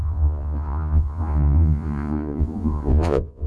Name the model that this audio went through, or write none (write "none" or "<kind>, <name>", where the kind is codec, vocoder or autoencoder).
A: vocoder, Vocos